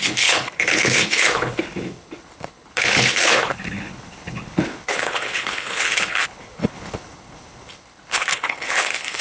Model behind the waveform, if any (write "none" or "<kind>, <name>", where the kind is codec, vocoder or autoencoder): codec, HILCodec